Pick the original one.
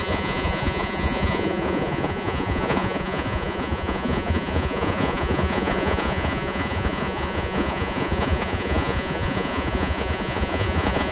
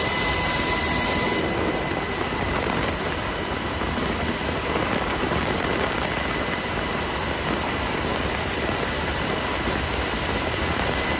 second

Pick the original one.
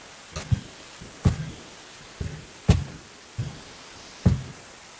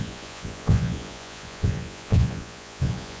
first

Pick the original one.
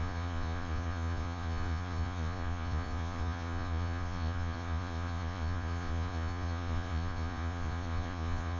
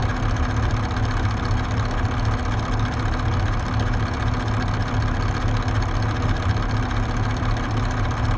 second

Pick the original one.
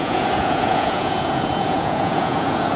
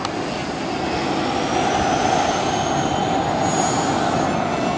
second